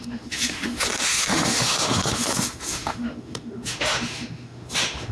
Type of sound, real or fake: fake